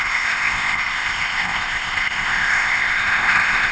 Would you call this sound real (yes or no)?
no